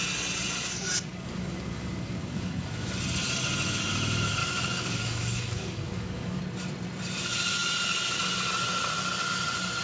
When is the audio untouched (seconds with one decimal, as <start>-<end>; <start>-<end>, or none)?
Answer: 0.0-1.1; 2.9-4.4; 6.4-9.8